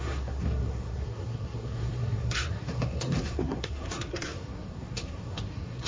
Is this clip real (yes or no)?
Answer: no